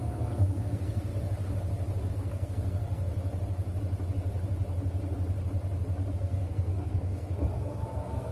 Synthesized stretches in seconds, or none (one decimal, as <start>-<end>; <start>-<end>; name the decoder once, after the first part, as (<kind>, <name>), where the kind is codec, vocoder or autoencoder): 0.0-1.1 (codec, SNAC); 2.1-3.1; 6.1-8.3